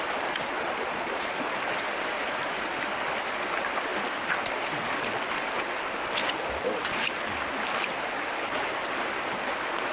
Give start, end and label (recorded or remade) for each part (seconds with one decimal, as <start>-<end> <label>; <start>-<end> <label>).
0.0-9.9 recorded